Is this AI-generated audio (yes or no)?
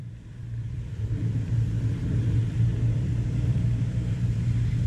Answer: yes